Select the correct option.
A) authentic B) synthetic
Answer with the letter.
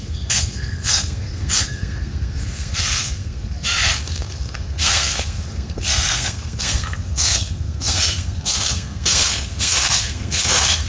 B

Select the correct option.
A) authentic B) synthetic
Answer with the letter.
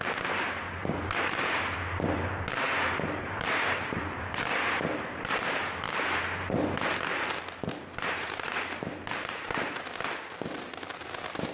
B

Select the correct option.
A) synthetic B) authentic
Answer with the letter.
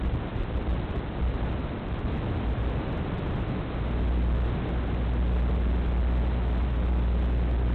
B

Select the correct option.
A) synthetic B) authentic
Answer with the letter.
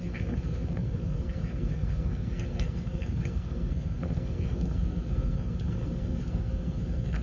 A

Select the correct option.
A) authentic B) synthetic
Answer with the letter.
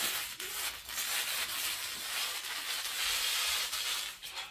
A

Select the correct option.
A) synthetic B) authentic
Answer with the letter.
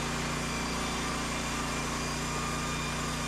B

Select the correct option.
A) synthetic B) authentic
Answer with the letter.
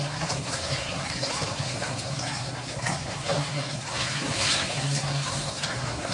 A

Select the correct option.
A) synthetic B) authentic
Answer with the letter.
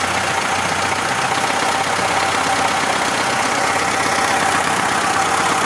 A